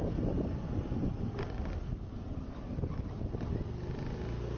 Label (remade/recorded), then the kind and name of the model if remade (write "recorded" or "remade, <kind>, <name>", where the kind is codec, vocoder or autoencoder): recorded